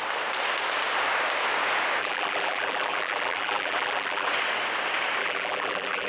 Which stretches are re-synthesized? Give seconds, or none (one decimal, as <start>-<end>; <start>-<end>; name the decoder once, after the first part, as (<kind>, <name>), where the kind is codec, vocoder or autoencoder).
2.0-4.3 (vocoder, BigVGAN v2); 5.2-6.1